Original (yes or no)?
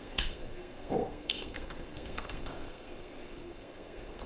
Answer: no